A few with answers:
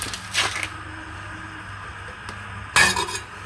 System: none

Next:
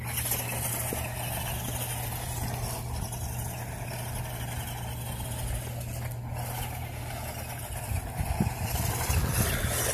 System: none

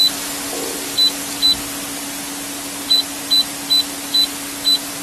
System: none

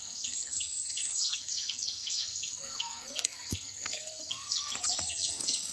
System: codec, SNAC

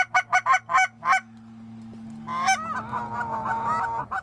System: none